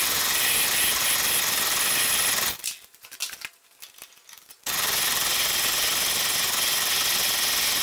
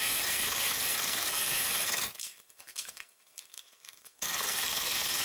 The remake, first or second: second